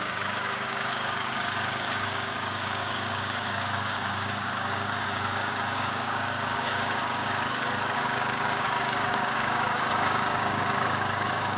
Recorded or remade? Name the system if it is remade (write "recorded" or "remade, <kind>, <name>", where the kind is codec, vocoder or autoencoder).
remade, codec, DAC